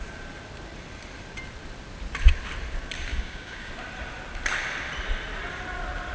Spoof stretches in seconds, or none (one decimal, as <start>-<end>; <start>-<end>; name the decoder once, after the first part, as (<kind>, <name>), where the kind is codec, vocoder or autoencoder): 3.1-3.7 (codec, DAC)